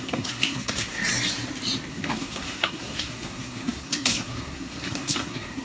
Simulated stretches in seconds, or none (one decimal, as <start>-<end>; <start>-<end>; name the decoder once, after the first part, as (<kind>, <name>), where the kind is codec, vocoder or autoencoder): 0.0-1.0 (codec, SNAC); 1.9-5.6